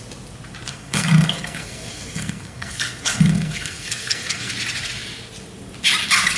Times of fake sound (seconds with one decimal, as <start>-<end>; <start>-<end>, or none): 0.7-4.5